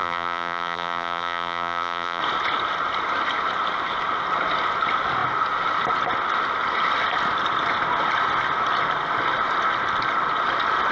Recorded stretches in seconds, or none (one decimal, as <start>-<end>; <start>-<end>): 2.2-10.9